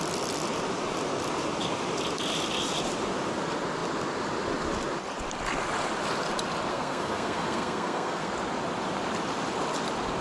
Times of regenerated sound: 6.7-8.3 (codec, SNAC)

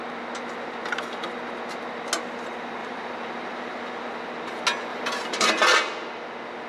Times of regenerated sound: 2.8-3.9 (vocoder, BigVGAN v2); 4.9-5.5

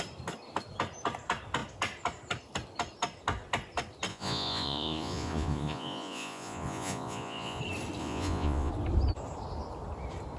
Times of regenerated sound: 4.1-7.6 (vocoder, Vocos); 8.0-8.7